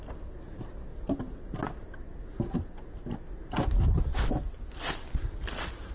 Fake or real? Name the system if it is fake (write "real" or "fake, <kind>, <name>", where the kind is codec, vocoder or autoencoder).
real